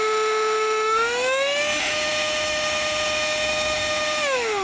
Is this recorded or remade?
remade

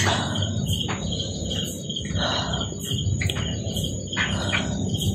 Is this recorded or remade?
remade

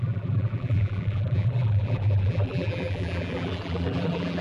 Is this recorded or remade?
remade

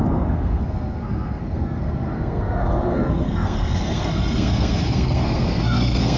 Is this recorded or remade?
remade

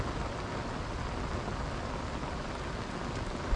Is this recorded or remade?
recorded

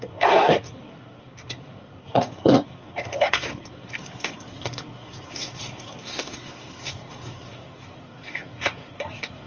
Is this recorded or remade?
remade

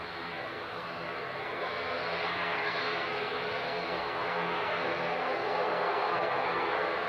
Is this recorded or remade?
remade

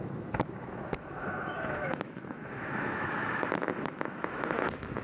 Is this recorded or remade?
remade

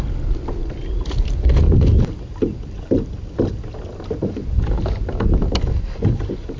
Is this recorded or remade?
recorded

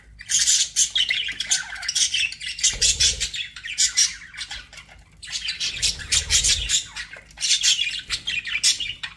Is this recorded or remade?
recorded